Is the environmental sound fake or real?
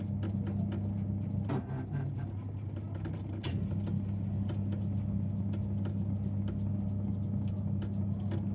real